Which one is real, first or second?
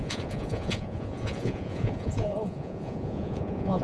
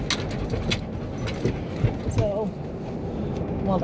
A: second